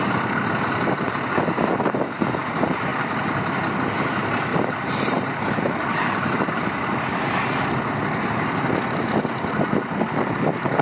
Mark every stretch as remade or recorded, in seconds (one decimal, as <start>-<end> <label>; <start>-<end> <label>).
0.0-4.5 recorded; 4.5-7.0 remade; 7.0-10.8 recorded